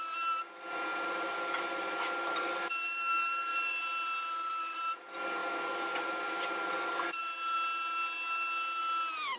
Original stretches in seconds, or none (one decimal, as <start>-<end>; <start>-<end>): 0.0-0.9; 2.4-3.5; 5.0-5.4; 6.1-9.4

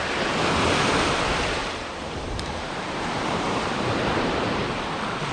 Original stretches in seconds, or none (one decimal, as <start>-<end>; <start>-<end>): 0.0-1.6; 4.8-5.3

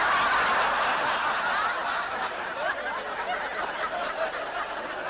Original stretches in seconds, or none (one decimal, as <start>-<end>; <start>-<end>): 0.0-1.8; 2.7-3.5; 4.4-5.1

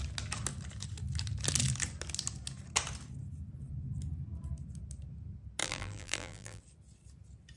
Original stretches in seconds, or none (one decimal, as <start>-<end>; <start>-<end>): 0.0-5.6; 6.6-7.6

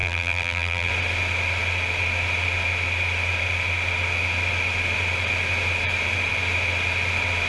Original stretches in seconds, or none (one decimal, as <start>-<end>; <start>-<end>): 0.9-7.5

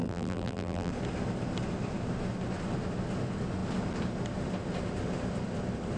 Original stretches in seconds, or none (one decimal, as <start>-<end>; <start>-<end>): 0.9-6.0

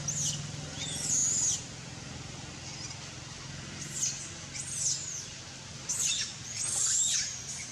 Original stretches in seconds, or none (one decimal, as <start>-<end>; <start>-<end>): 0.0-7.7

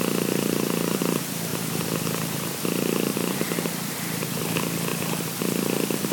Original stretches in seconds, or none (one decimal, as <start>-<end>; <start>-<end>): 0.0-1.5; 2.0-3.1; 4.4-4.9; 5.6-6.1